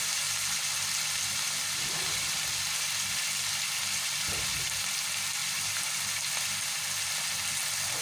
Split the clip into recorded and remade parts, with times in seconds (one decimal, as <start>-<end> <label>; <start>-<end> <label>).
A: 0.0-5.4 recorded; 5.4-6.0 remade; 6.0-8.0 recorded